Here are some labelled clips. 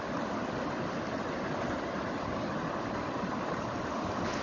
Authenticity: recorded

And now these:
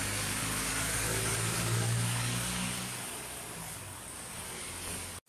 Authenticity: remade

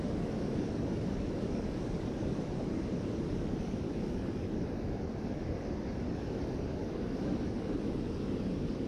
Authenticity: remade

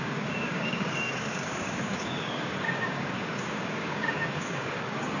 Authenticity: remade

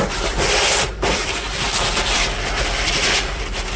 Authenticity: recorded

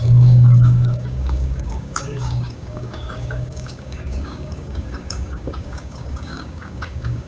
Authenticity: remade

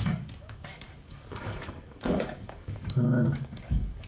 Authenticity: remade